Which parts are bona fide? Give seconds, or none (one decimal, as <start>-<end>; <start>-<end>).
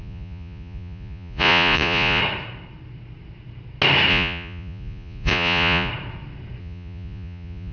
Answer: 2.2-4.1; 5.9-6.6